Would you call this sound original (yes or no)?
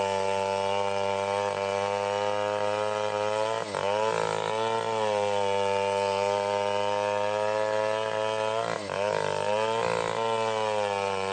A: yes